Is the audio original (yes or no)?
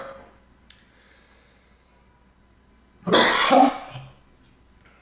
yes